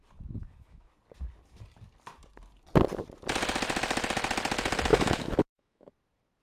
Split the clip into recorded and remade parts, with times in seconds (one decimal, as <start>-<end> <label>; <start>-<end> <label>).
0.0-0.4 recorded; 0.4-0.9 remade; 0.9-4.9 recorded; 4.9-5.9 remade; 5.9-6.4 recorded